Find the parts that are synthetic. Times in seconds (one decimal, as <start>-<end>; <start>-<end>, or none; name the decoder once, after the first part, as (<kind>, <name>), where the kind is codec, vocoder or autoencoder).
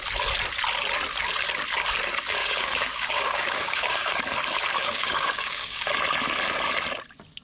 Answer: 2.4-4.1 (codec, DAC); 4.8-5.9